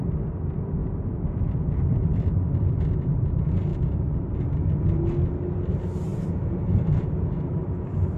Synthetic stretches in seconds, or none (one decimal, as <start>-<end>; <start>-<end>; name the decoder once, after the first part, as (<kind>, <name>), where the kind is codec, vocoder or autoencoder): 3.7-4.5 (vocoder, BigVGAN v2); 6.1-7.7